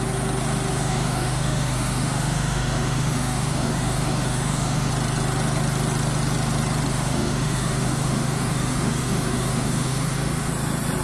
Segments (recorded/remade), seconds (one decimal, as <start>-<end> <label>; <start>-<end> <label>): 0.0-0.7 recorded; 0.7-4.9 remade; 4.9-6.9 recorded; 6.9-10.5 remade; 10.5-11.0 recorded

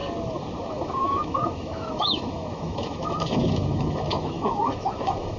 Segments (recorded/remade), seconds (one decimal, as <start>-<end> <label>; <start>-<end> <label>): 0.0-0.6 recorded; 0.6-5.4 remade

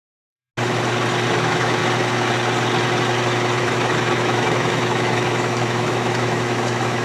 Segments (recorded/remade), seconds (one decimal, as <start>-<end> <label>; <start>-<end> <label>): 0.0-0.5 remade; 0.5-1.3 recorded; 1.3-1.8 remade; 1.8-3.6 recorded; 3.6-7.0 remade